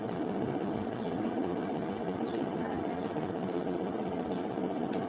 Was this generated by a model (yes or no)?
yes